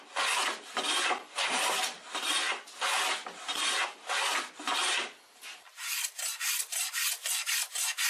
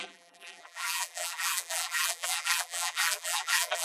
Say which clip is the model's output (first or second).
second